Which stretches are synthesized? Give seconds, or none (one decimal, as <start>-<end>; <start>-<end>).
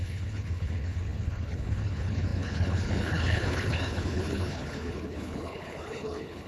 0.0-6.5